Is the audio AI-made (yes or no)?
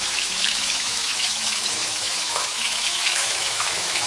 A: yes